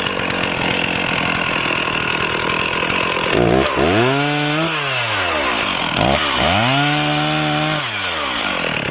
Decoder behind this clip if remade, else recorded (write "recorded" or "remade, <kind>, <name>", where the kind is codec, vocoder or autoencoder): recorded